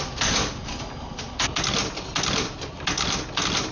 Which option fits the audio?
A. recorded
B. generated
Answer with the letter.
A